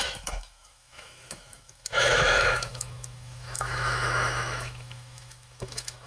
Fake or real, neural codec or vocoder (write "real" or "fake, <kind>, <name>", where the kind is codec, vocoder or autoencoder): fake, autoencoder, DAC-VAE